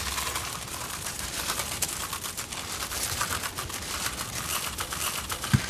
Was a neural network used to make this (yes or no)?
no